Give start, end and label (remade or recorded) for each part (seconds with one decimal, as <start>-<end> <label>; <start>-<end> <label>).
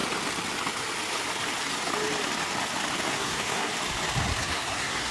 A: 0.0-3.1 recorded; 3.1-3.7 remade; 3.7-4.4 recorded; 4.4-5.1 remade